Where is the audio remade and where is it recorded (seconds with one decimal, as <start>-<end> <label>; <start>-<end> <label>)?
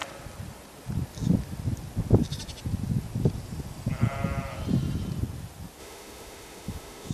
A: 0.0-5.8 recorded; 5.8-7.1 remade